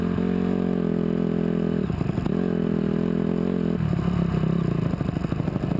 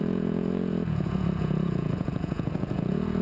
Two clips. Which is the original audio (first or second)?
first